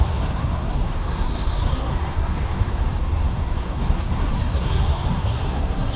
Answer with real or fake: fake